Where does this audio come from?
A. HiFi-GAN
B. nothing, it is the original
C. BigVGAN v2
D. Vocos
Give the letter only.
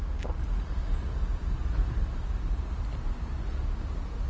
B